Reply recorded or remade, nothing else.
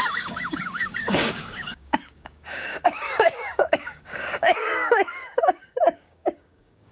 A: remade